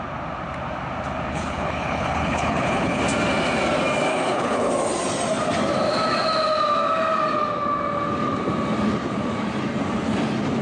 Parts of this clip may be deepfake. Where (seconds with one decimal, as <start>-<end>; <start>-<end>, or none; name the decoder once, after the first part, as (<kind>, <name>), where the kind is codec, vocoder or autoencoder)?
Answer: 1.3-3.0 (codec, HILCodec); 4.1-4.7